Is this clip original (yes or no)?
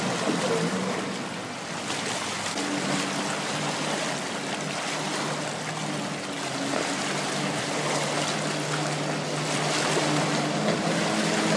yes